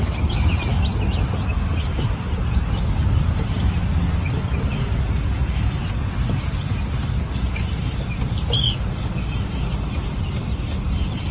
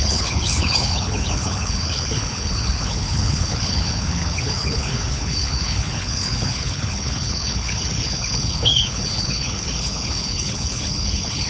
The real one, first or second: first